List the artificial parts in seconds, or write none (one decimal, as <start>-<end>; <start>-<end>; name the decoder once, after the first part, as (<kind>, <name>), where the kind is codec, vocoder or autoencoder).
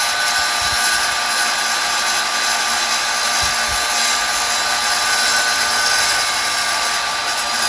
none